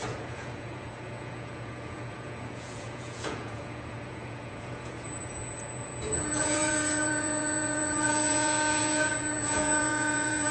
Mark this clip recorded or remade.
remade